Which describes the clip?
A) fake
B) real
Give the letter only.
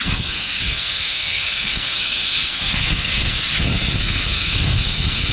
A